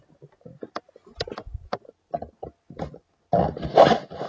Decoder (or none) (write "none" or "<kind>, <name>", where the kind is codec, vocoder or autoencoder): none